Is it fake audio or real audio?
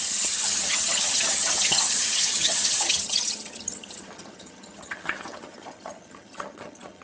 fake